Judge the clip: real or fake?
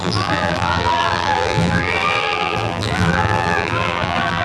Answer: fake